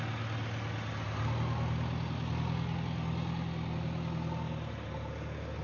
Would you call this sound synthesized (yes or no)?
no